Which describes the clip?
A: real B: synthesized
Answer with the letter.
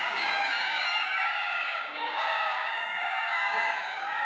B